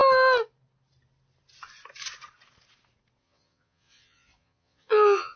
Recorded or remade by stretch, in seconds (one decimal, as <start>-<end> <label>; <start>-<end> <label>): 0.0-3.2 recorded; 3.2-5.4 remade